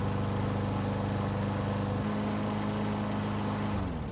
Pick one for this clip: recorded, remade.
recorded